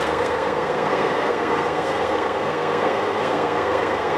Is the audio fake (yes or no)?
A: yes